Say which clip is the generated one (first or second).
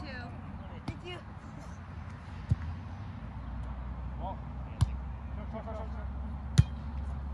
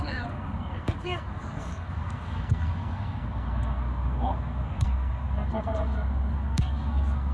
second